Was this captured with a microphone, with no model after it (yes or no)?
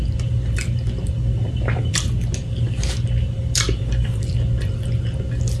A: yes